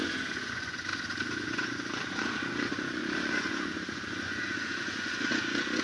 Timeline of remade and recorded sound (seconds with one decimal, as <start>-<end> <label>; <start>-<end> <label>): 0.0-5.8 remade